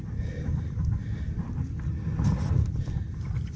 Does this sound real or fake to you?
real